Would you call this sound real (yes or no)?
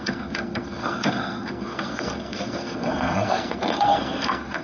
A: no